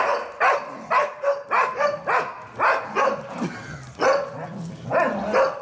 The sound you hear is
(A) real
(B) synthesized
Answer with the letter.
A